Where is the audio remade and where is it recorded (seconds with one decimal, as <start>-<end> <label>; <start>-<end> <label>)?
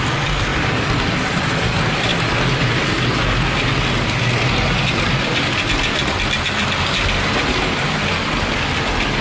0.0-9.2 recorded